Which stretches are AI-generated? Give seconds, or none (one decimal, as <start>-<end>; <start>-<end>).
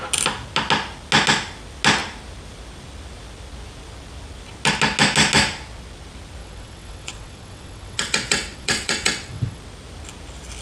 6.4-9.6